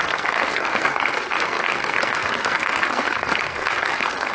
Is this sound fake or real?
fake